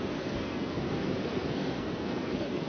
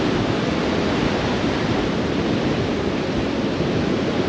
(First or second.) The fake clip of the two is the first